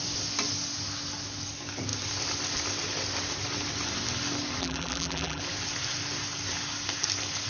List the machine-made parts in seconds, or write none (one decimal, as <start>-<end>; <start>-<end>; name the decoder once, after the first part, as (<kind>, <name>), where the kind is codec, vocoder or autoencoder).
4.6-5.4 (vocoder, BigVGAN v2)